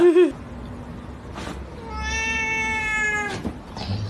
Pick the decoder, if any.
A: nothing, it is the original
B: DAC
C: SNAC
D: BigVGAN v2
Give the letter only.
A